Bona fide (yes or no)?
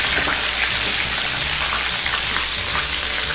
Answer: yes